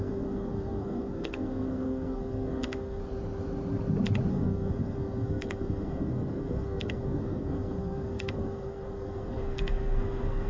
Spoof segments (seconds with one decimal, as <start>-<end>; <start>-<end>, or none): 0.0-3.0; 4.3-10.5